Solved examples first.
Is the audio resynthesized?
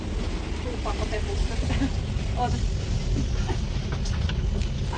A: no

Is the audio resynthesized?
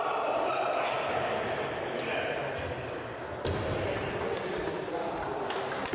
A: no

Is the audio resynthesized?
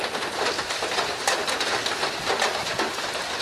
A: no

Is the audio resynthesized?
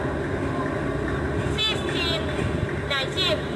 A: no